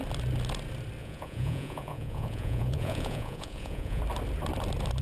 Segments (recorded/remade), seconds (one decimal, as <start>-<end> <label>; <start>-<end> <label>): 0.0-1.0 recorded; 1.0-4.0 remade; 4.0-5.0 recorded